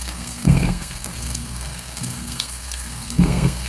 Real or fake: fake